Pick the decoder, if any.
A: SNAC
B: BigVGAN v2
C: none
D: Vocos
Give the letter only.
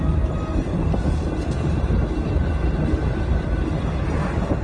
C